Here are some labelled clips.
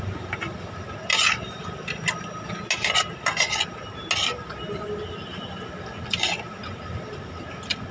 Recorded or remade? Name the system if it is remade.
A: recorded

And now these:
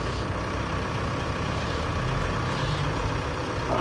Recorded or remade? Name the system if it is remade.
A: recorded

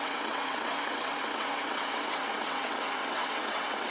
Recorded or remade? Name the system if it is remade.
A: remade, vocoder, WaveNeXt